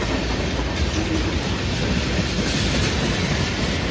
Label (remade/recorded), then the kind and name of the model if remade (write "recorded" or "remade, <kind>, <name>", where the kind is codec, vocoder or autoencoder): recorded